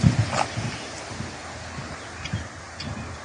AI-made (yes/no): no